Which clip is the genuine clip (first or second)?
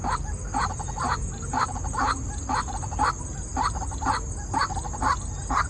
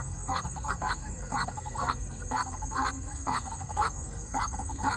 first